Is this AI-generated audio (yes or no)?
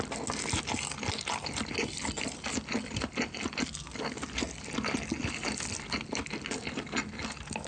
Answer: no